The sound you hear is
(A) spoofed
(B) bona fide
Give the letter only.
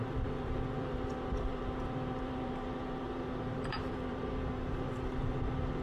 A